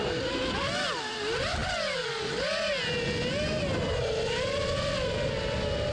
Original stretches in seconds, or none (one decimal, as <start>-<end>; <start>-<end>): 0.0-5.9